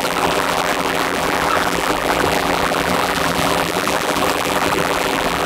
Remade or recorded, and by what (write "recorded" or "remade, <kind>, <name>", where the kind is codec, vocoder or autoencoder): remade, vocoder, BigVGAN v2